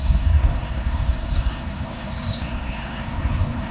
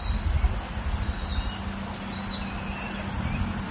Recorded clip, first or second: second